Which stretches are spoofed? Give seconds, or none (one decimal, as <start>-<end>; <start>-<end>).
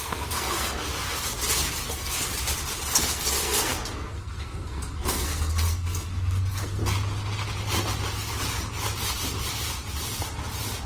0.0-0.9; 1.9-2.3; 2.9-6.8